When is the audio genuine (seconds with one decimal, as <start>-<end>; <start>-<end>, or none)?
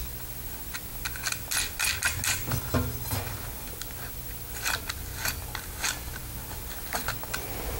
0.0-7.8